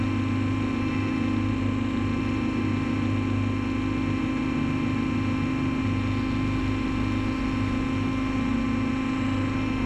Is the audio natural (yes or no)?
yes